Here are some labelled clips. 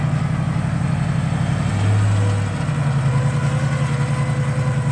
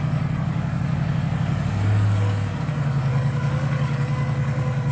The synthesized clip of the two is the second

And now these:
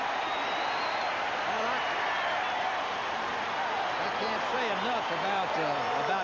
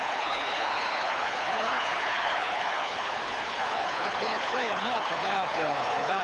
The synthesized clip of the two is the second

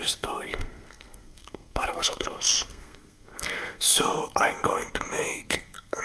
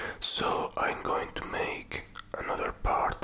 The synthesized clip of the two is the first